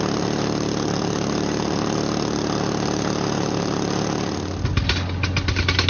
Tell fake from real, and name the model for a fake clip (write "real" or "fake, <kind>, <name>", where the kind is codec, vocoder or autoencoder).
real